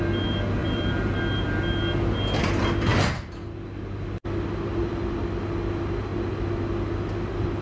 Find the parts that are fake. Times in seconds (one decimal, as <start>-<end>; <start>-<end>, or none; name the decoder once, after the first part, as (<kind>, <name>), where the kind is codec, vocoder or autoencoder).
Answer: 0.6-1.2 (vocoder, BigVGAN v2)